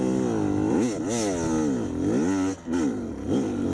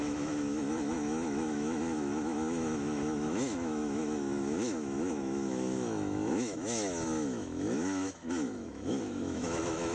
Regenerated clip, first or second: second